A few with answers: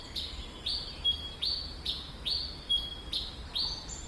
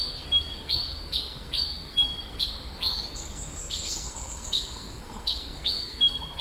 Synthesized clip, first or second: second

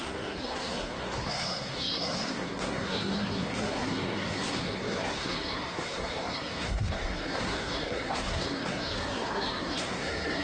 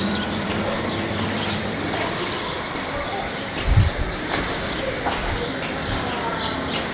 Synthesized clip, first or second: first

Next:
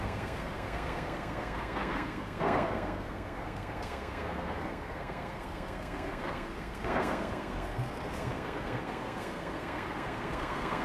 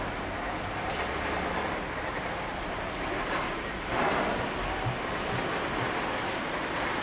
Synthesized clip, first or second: first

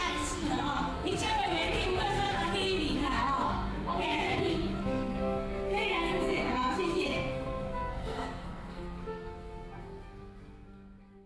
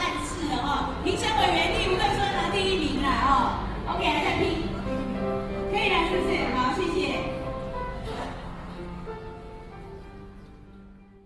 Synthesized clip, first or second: first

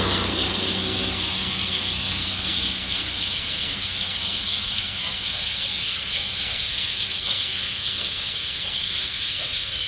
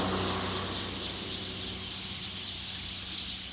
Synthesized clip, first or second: first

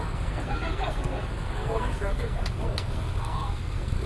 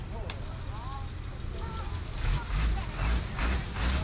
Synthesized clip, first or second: first